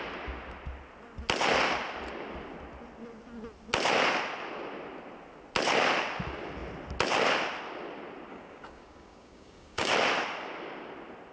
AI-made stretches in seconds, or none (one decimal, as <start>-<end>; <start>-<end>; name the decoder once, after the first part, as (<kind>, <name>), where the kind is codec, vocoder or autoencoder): 8.3-9.9 (codec, DAC)